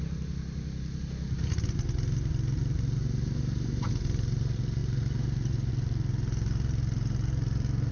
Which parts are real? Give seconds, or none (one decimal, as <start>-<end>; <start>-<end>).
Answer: 0.0-7.9